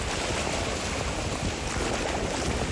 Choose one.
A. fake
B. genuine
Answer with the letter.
B